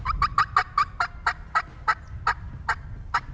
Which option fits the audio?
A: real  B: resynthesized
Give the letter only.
A